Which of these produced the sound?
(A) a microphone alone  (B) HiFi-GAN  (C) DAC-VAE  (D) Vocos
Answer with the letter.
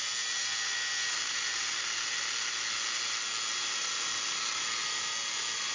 A